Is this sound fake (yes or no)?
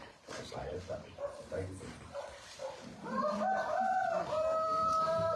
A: yes